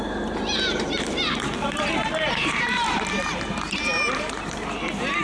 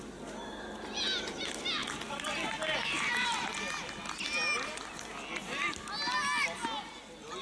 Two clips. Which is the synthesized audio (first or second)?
first